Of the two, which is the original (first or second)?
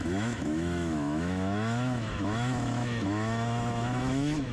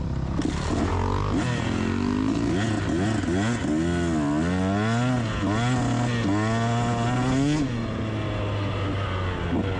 second